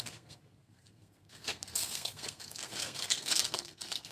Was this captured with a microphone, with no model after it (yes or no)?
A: no